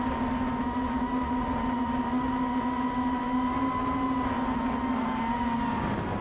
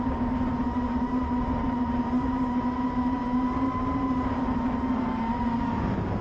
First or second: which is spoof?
second